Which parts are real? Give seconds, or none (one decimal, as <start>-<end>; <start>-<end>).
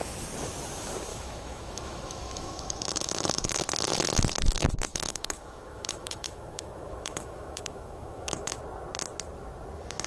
0.0-1.1; 3.6-4.9; 8.6-10.1